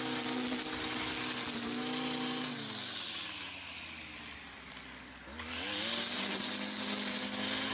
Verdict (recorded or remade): recorded